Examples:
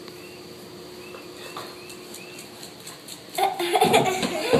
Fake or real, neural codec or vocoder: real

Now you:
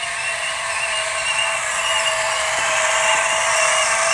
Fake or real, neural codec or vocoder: real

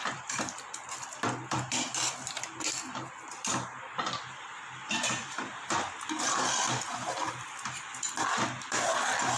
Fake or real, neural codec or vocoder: fake, vocoder, BigVGAN v2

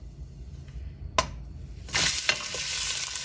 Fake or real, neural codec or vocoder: real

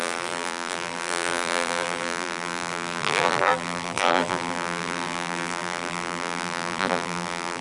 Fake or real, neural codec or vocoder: fake, vocoder, BigVGAN v2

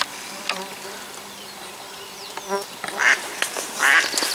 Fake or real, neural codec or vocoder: real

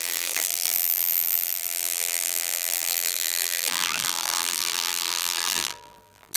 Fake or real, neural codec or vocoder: fake, vocoder, BigVGAN v2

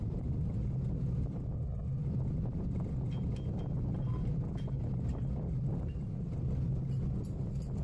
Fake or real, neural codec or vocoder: real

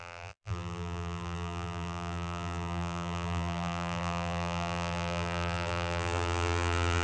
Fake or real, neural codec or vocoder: fake, vocoder, BigVGAN v2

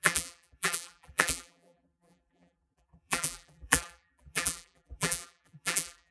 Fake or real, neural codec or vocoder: fake, vocoder, BigVGAN v2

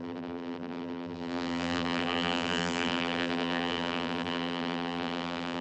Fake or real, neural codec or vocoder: fake, vocoder, BigVGAN v2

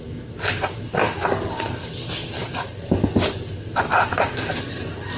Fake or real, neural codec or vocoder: fake, vocoder, BigVGAN v2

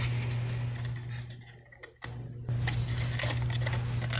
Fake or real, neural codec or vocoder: real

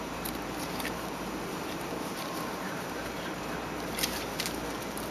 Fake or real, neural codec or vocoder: fake, vocoder, BigVGAN v2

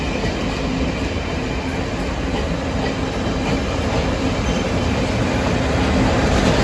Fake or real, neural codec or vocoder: real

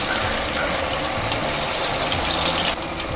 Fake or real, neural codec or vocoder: real